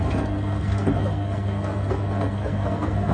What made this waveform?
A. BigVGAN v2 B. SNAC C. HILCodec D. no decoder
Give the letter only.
B